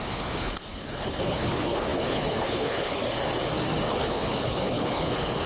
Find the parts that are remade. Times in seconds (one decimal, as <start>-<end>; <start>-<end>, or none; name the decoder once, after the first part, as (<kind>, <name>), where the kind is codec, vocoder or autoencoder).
0.0-3.0 (codec, HILCodec); 3.9-5.5